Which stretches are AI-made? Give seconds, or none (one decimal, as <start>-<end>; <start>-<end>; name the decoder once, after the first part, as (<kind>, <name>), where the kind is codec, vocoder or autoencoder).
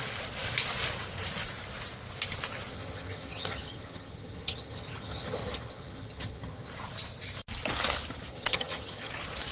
2.7-6.7 (vocoder, HiFi-GAN); 8.3-9.1